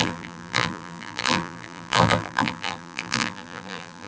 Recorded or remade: remade